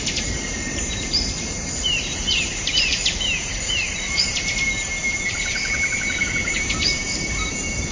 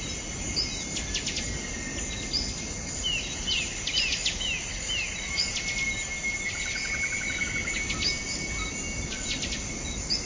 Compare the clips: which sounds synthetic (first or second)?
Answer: first